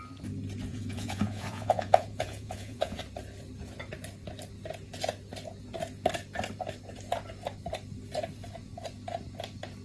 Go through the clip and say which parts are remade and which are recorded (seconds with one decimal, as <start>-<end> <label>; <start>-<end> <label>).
0.0-0.7 recorded; 0.7-3.0 remade; 3.0-9.8 recorded